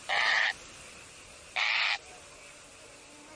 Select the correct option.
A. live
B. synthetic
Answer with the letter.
A